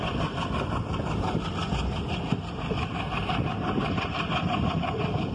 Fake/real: real